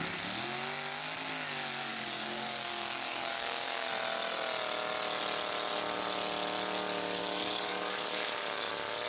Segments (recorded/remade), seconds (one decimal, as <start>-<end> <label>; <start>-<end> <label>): 0.0-1.9 recorded; 1.9-3.9 remade; 3.9-7.2 recorded; 7.2-8.7 remade; 8.7-9.1 recorded